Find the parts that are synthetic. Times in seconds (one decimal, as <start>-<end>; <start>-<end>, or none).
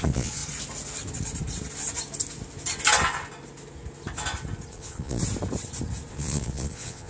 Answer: 0.0-0.4; 4.7-5.2; 6.1-7.1